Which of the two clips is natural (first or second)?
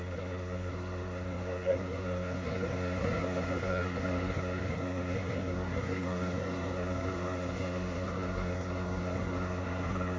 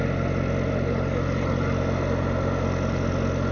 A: second